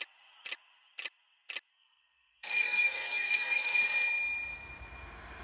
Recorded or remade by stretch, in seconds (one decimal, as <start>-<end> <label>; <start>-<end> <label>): 0.0-1.7 recorded; 1.7-3.8 remade; 3.8-5.4 recorded